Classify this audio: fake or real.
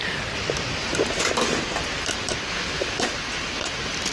real